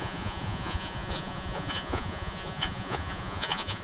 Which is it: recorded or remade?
remade